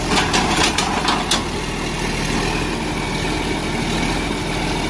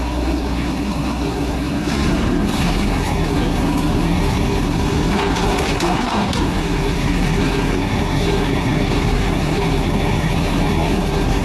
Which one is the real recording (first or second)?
first